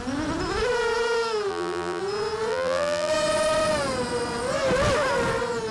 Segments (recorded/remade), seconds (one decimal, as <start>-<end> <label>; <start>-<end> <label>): 0.0-1.5 recorded; 1.5-2.0 remade; 2.0-2.5 recorded; 2.5-3.1 remade; 3.1-5.7 recorded